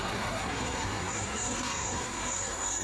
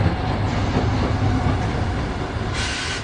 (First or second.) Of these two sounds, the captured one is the second